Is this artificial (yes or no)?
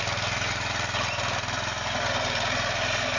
no